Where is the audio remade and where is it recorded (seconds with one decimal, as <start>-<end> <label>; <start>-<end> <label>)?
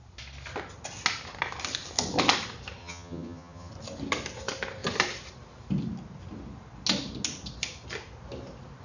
0.0-2.8 recorded; 2.8-3.7 remade; 3.7-8.8 recorded